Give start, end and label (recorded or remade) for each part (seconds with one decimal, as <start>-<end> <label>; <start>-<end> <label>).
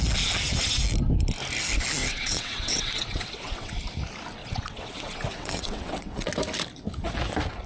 0.0-2.0 recorded; 2.0-3.7 remade; 3.7-4.4 recorded; 4.4-6.3 remade; 6.3-7.7 recorded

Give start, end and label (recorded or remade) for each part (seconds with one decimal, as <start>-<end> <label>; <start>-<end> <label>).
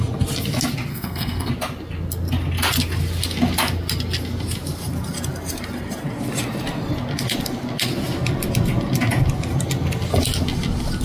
0.0-0.9 recorded; 0.9-1.5 remade; 1.5-11.0 recorded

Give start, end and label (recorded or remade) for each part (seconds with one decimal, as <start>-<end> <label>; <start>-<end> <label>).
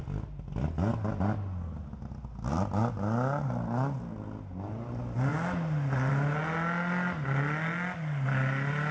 0.0-8.9 recorded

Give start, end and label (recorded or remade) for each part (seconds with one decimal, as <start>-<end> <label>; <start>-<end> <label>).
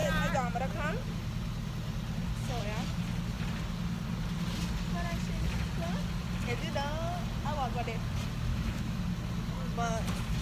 0.0-8.5 recorded; 8.5-9.0 remade; 9.0-10.4 recorded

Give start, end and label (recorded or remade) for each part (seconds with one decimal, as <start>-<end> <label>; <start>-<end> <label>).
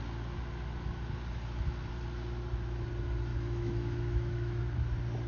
0.0-3.3 recorded; 3.3-4.6 remade; 4.6-5.3 recorded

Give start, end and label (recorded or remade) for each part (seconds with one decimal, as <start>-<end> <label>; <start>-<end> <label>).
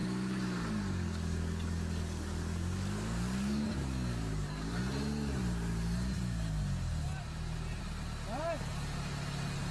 0.0-4.8 remade; 4.8-9.7 recorded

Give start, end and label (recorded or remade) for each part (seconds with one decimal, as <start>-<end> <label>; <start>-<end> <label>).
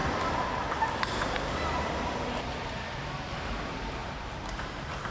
0.0-4.0 recorded; 4.0-5.1 remade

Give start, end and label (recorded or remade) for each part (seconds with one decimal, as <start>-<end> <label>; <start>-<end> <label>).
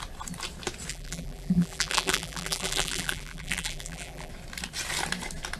0.0-0.9 recorded; 0.9-4.3 remade; 4.3-5.6 recorded